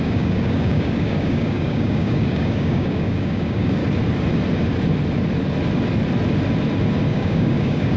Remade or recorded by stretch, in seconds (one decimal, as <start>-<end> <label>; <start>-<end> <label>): 0.0-3.8 remade; 3.8-7.1 recorded; 7.1-8.0 remade